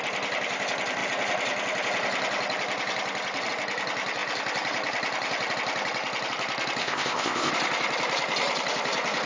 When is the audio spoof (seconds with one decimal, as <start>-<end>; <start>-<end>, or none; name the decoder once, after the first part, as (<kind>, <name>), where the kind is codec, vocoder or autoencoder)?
6.8-7.5 (codec, ZipCodec)